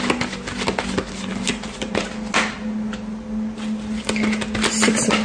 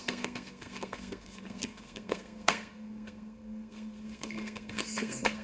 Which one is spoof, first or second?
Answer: second